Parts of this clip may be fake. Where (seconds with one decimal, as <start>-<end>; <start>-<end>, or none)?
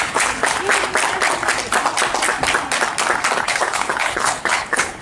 0.0-0.4; 3.4-5.0